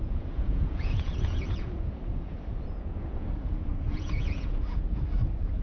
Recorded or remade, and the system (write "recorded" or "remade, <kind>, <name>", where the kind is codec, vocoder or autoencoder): remade, vocoder, Vocos